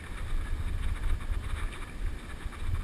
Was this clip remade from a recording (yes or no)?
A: no